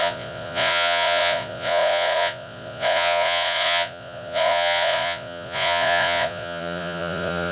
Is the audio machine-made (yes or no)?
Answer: yes